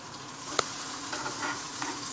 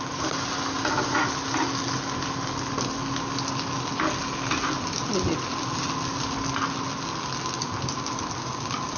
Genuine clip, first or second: second